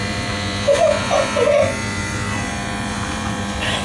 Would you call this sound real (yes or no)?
no